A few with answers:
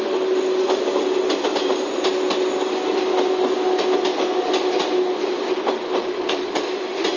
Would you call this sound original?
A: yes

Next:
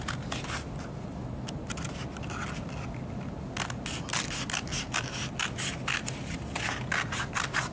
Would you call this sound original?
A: yes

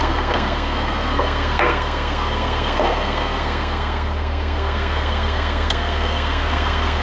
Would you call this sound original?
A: no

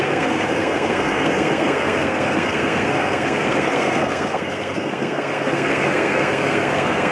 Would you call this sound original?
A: no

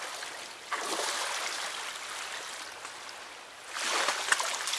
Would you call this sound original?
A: yes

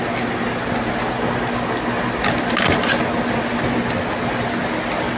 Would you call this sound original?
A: yes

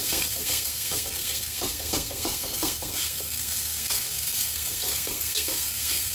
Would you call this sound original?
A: no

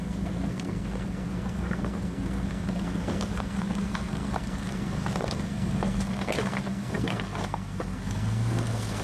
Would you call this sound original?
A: no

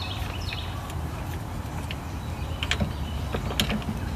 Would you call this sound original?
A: yes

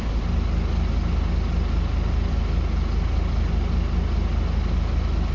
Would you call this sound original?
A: yes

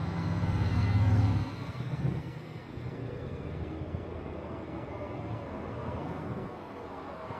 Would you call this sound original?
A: no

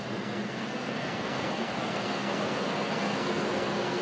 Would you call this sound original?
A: no